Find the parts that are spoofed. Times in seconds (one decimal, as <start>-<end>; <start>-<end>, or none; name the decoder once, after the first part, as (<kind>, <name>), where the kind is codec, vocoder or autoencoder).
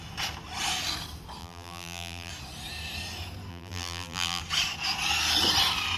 1.4-2.3 (vocoder, BigVGAN v2); 3.5-4.4